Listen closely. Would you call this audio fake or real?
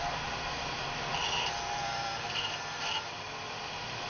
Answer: fake